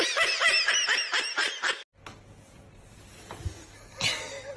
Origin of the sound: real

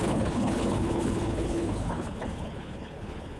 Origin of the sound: fake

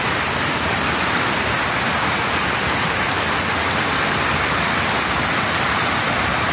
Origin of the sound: real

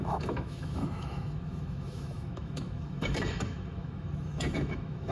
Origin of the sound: fake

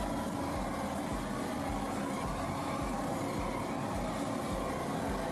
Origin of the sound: real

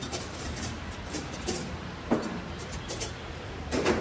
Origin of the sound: fake